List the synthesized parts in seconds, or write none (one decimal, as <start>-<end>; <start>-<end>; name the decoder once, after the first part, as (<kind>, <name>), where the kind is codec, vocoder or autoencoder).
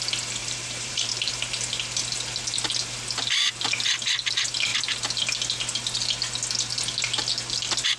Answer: 0.4-1.3 (vocoder, BigVGAN v2)